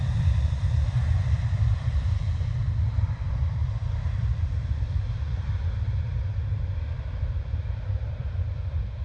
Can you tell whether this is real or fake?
fake